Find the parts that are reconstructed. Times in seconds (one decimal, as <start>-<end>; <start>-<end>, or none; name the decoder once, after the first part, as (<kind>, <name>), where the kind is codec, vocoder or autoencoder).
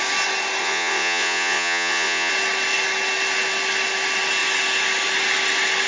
0.6-2.3 (vocoder, Vocos)